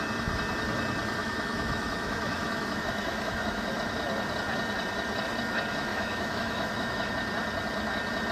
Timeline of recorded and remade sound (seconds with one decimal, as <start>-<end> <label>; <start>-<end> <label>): 0.0-1.2 recorded; 1.2-3.7 remade; 3.7-5.9 recorded; 5.9-7.1 remade; 7.1-8.3 recorded